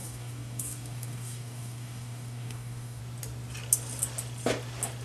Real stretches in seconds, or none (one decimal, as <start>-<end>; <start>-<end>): 3.0-5.0